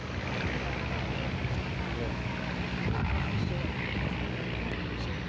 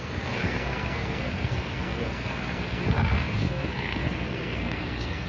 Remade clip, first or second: second